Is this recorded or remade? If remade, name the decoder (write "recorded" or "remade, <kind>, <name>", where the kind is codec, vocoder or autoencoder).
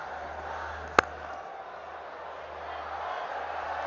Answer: recorded